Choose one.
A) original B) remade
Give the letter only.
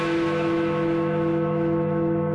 B